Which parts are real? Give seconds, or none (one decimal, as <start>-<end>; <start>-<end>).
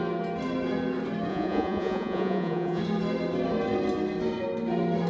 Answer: 0.0-1.3; 2.8-5.1